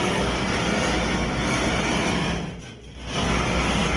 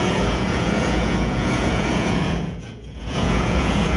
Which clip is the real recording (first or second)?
first